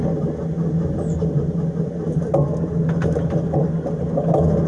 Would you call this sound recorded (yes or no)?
yes